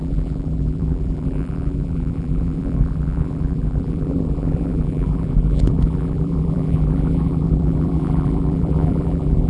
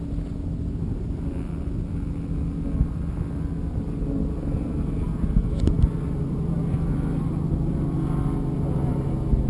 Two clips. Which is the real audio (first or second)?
second